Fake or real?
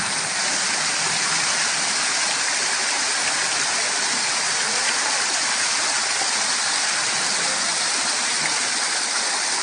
real